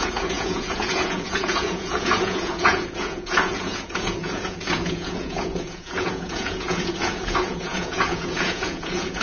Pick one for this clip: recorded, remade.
remade